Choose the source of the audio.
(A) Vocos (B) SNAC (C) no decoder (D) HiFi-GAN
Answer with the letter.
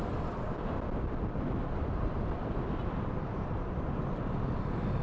C